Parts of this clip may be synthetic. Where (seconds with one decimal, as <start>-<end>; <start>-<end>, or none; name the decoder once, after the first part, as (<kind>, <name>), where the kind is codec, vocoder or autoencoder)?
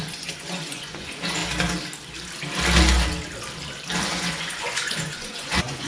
0.0-1.4 (vocoder, Vocos); 4.0-5.9